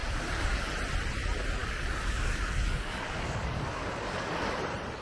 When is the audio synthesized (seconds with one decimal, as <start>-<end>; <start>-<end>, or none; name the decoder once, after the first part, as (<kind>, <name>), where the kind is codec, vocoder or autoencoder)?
0.0-0.7 (codec, DAC); 1.6-4.6